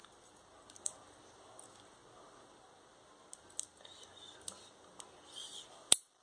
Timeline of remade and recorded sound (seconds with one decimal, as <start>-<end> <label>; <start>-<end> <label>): 0.0-6.2 recorded